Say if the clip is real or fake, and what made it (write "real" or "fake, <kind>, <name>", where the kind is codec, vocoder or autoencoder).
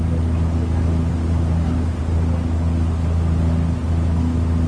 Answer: real